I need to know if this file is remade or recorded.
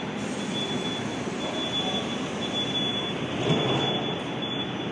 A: recorded